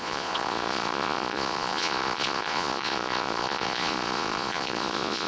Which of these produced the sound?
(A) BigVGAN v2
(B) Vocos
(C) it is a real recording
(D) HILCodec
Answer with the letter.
B